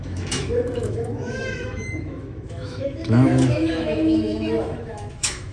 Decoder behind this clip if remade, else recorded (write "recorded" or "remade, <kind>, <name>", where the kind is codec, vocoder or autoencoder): remade, autoencoder, DAC-VAE